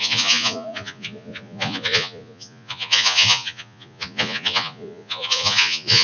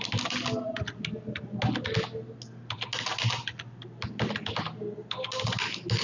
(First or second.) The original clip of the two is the second